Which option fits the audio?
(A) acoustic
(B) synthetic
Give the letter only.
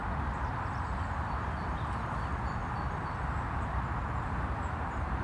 A